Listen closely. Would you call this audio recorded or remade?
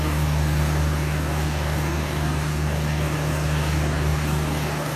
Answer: remade